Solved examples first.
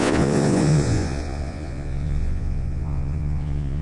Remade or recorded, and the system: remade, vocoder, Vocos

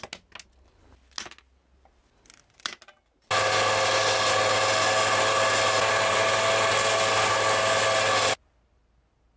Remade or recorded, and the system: recorded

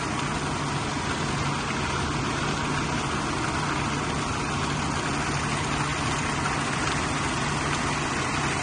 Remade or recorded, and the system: recorded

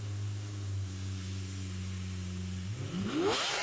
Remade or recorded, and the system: recorded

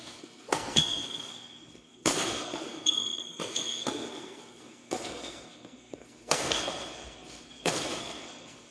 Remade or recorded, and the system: remade, codec, SNAC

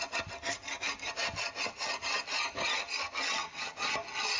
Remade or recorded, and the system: recorded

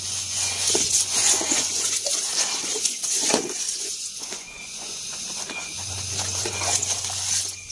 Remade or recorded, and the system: remade, vocoder, Vocos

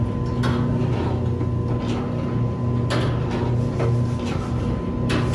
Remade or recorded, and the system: recorded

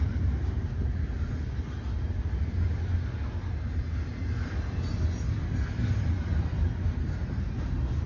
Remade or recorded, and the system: recorded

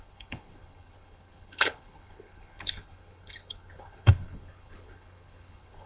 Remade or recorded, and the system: remade, codec, HILCodec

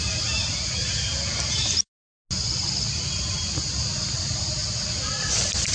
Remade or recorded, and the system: recorded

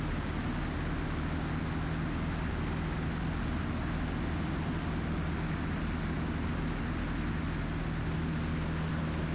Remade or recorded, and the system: recorded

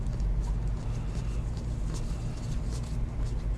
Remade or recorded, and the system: recorded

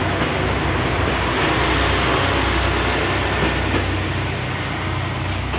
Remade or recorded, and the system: recorded